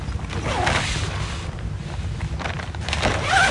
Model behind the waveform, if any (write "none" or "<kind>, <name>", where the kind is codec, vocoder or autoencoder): none